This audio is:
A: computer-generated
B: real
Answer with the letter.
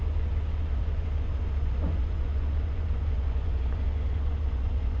A